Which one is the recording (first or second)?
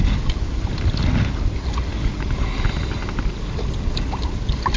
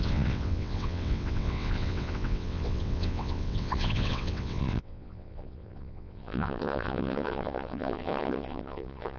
first